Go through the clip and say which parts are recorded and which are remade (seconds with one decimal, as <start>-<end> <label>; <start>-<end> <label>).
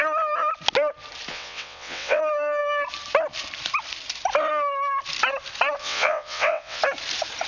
0.0-1.3 recorded; 1.3-2.2 remade; 2.2-5.8 recorded; 5.8-6.8 remade; 6.8-7.5 recorded